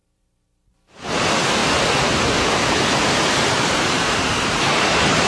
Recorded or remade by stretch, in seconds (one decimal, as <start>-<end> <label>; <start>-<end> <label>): 0.0-1.2 remade; 1.2-3.0 recorded; 3.0-5.3 remade